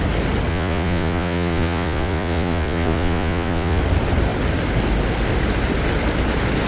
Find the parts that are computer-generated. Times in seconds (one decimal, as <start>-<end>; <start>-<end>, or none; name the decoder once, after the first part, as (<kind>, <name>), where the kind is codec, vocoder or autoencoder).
0.5-3.8 (vocoder, Vocos)